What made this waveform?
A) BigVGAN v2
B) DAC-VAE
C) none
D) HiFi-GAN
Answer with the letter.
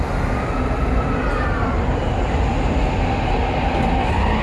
C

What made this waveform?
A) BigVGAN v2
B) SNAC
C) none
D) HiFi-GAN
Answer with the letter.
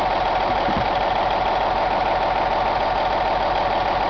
C